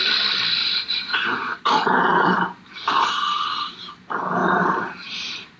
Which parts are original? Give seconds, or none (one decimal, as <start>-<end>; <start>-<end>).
0.0-0.6; 2.9-4.4; 5.1-5.6